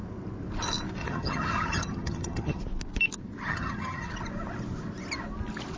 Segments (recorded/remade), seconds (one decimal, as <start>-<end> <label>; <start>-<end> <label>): 0.0-1.0 recorded; 1.0-2.6 remade; 2.6-3.5 recorded; 3.5-4.1 remade; 4.1-5.8 recorded